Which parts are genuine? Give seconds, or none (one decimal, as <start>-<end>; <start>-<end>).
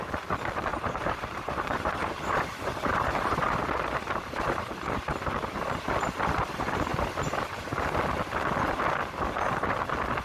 0.0-0.7; 4.8-10.2